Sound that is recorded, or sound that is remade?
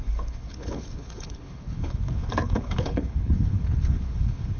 remade